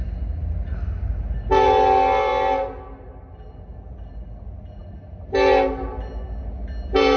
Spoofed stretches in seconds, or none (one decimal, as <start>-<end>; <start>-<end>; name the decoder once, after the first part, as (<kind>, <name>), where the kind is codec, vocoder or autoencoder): none